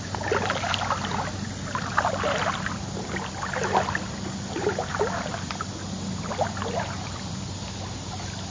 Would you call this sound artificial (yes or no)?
no